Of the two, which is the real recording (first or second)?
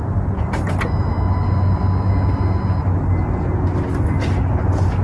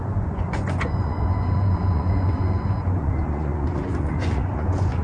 first